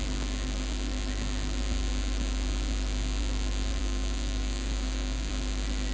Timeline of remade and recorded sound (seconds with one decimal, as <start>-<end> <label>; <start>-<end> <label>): 0.0-3.8 recorded; 3.8-5.3 remade; 5.3-5.9 recorded